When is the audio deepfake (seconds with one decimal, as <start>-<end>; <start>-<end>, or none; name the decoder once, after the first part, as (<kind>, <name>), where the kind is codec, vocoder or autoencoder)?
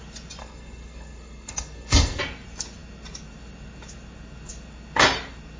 0.4-2.2 (codec, SNAC)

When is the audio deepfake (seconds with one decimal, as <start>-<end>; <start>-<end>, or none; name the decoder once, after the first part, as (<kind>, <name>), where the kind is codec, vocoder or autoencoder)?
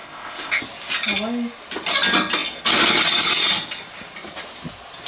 0.0-0.6 (codec, ZipCodec)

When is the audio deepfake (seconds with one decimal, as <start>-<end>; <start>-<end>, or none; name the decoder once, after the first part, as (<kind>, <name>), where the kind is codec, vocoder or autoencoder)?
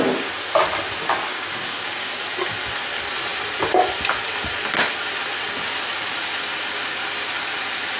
1.3-2.2 (codec, DAC)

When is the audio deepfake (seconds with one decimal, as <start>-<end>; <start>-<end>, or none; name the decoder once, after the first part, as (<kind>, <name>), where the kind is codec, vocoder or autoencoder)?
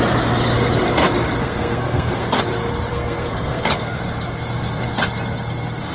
1.4-2.4 (codec, SNAC); 2.9-4.0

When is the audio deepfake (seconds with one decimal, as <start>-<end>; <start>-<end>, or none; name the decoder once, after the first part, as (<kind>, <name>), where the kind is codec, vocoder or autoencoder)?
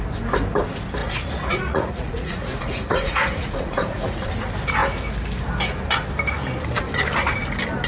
1.0-4.3 (vocoder, Vocos)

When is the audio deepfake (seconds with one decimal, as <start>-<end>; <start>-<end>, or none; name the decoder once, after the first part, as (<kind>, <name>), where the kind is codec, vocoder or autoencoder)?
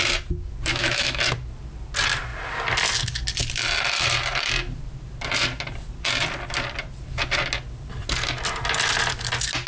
0.7-1.2 (autoencoder, DAC-VAE)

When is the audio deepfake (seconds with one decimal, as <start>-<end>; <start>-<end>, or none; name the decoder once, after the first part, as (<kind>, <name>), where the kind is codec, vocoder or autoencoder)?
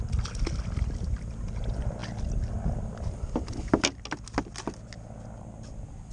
none